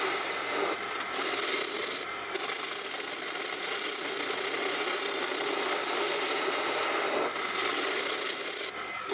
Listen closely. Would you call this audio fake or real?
real